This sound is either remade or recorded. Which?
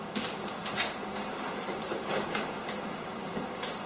recorded